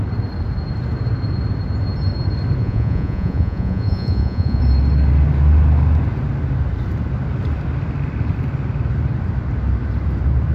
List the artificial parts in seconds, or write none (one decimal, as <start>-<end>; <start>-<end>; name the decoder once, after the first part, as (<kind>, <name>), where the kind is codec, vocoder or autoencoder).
2.6-4.6 (vocoder, Vocos)